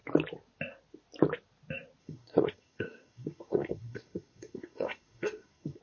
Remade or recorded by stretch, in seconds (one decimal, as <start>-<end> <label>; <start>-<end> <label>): 0.0-2.0 recorded; 2.0-5.8 remade